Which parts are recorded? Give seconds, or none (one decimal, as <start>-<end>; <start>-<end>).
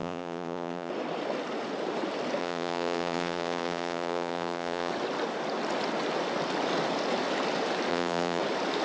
0.9-2.4; 4.9-7.9; 8.4-8.8